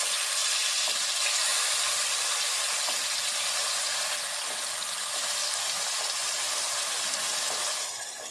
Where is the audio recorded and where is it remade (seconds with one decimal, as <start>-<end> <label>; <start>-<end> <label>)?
0.0-1.5 recorded; 1.5-3.6 remade; 3.6-5.4 recorded; 5.4-6.0 remade; 6.0-8.3 recorded